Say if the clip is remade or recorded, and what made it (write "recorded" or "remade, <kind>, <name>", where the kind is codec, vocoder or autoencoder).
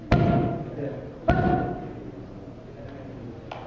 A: recorded